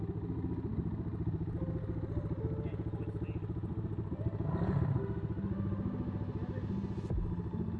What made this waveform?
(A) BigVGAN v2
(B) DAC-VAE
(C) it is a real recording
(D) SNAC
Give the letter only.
C